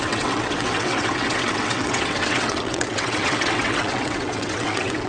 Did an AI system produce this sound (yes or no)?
yes